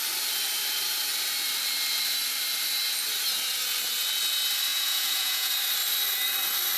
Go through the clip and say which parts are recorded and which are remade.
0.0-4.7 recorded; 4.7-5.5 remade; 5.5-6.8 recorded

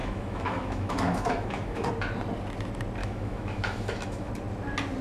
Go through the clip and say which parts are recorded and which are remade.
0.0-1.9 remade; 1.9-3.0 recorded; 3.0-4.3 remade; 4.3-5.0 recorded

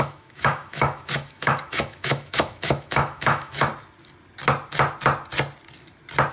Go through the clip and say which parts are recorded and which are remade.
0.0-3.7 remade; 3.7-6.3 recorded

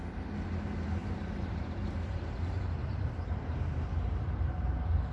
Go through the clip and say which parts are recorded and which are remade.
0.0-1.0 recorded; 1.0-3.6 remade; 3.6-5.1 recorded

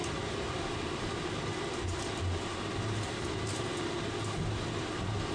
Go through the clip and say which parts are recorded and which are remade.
0.0-5.3 recorded

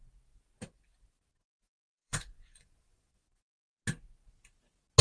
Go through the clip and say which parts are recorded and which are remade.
0.0-1.4 recorded; 1.4-3.8 remade; 3.8-5.0 recorded